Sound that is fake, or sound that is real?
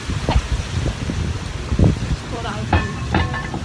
fake